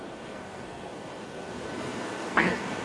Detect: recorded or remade remade